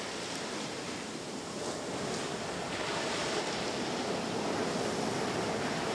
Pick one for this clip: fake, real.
real